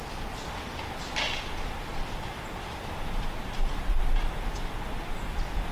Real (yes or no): yes